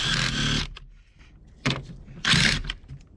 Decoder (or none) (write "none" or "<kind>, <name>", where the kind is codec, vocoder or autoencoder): none